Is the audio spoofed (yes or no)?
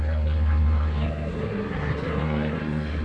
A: yes